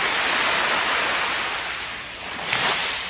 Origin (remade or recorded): recorded